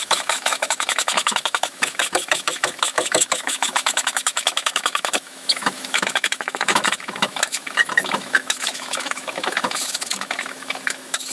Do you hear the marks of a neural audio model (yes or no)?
yes